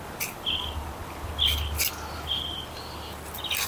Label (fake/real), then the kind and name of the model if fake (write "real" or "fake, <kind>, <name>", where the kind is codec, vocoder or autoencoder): real